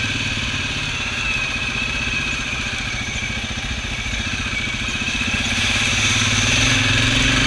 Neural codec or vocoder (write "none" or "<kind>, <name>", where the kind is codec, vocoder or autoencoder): vocoder, BigVGAN v2